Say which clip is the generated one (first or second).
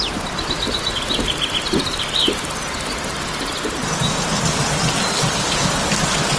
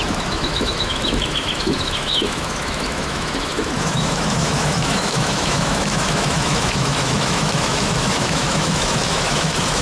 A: second